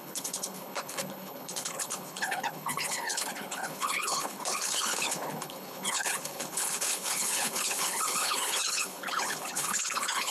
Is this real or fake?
fake